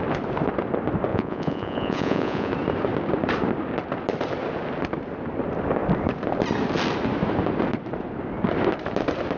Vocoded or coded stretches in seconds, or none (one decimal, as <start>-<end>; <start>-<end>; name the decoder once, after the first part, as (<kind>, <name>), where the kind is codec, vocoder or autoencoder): 1.1-2.5 (vocoder, Vocos)